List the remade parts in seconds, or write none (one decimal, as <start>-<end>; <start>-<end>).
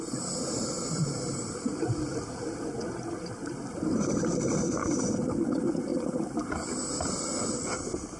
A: none